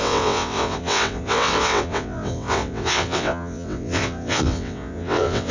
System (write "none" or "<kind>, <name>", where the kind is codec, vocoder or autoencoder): vocoder, WaveNeXt